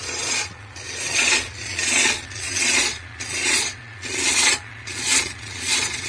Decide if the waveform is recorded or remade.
remade